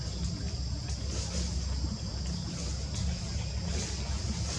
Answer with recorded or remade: recorded